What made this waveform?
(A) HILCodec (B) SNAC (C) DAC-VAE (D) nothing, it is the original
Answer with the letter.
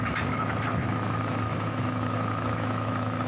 C